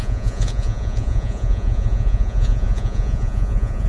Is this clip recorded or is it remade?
remade